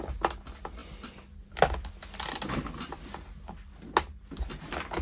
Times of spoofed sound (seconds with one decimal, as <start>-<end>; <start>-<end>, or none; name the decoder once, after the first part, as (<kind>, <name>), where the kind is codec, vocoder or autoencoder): none